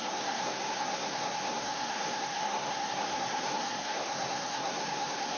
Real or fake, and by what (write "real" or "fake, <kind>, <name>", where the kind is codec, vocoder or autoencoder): fake, codec, SNAC